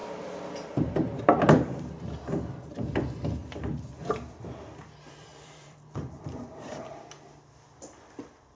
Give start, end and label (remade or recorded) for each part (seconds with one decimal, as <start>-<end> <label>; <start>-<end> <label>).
0.0-1.2 remade; 1.2-3.4 recorded; 3.4-4.1 remade; 4.1-5.3 recorded; 5.3-7.1 remade; 7.1-8.5 recorded